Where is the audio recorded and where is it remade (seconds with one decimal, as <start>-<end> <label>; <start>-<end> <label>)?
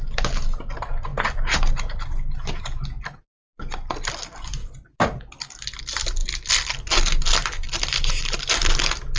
0.0-9.2 recorded